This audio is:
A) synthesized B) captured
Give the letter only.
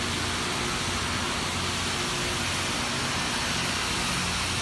B